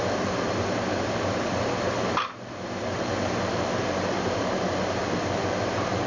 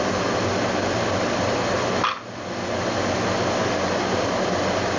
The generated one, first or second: first